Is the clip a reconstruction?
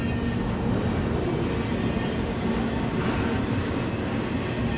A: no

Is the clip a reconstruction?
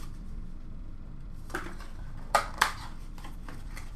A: yes